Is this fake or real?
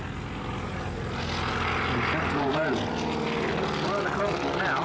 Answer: real